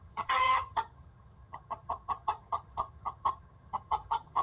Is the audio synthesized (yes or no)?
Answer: yes